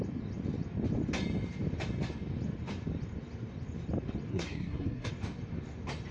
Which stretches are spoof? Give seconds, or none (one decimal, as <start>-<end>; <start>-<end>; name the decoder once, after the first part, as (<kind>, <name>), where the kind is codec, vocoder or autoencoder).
4.3-5.1 (codec, SNAC)